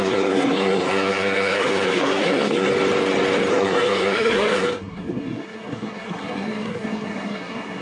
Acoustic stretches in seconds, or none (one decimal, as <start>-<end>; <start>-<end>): 2.7-3.5